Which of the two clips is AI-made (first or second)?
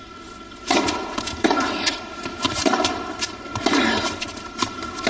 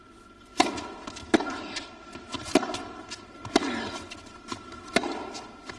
first